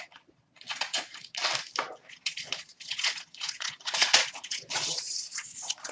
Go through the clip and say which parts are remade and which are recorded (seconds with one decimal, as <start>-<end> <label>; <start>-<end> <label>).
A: 0.0-1.4 remade; 1.4-2.1 recorded; 2.1-5.9 remade